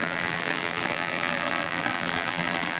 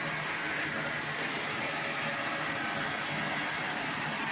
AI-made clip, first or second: first